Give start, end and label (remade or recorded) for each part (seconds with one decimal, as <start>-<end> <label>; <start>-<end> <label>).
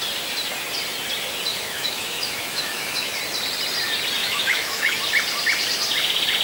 0.0-1.5 recorded; 1.5-3.1 remade; 3.1-4.2 recorded; 4.2-5.0 remade; 5.0-6.4 recorded